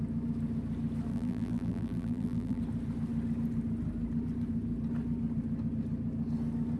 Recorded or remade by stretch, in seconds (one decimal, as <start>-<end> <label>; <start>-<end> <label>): 0.0-1.1 recorded; 1.1-2.6 remade; 2.6-6.8 recorded